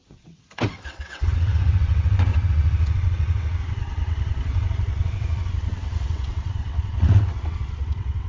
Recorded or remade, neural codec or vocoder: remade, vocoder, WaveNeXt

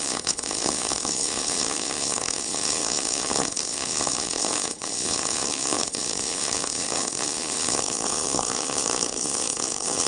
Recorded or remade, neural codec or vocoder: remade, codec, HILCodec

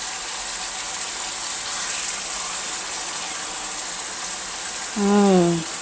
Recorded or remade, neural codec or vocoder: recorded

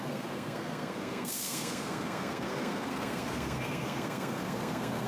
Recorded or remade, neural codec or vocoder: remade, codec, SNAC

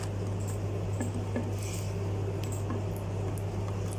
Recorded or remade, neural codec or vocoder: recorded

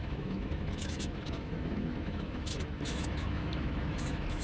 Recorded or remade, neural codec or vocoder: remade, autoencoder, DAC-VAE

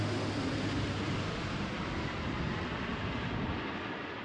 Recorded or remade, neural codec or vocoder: recorded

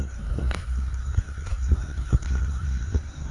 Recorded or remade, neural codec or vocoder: remade, codec, SNAC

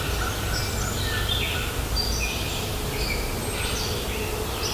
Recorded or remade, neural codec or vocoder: recorded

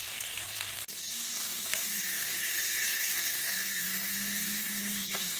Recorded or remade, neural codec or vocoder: remade, codec, DAC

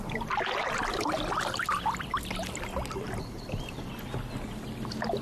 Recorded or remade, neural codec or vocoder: recorded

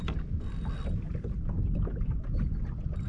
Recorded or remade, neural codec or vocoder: recorded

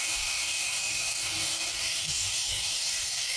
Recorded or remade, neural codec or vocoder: remade, codec, DAC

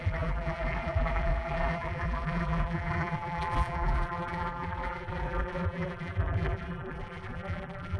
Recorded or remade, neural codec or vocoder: remade, vocoder, BigVGAN v2